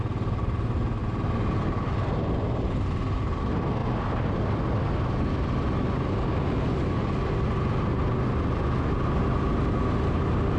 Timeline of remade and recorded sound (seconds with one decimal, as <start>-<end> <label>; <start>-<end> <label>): 0.0-10.6 recorded